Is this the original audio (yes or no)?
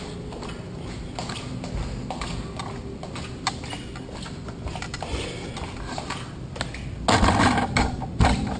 yes